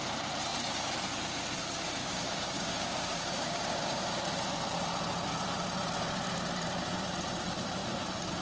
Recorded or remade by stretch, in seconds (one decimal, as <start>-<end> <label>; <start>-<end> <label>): 0.0-2.0 recorded; 2.0-4.2 remade; 4.2-8.4 recorded